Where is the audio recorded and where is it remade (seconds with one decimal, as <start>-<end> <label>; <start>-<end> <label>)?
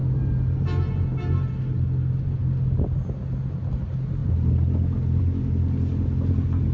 0.0-6.7 recorded